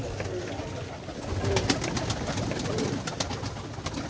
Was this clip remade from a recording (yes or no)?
no